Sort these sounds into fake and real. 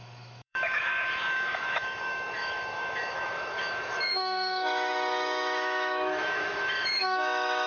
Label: fake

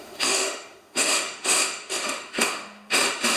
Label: fake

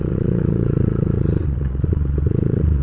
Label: fake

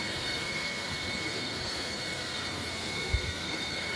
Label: fake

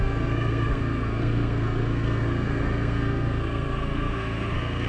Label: fake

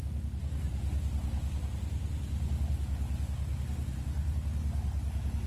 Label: real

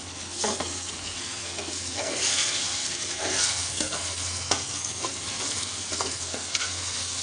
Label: fake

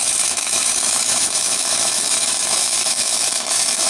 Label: fake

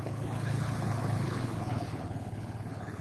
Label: fake